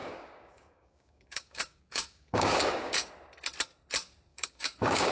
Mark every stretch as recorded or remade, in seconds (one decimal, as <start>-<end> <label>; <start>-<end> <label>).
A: 0.0-3.1 remade; 3.1-4.3 recorded; 4.3-5.1 remade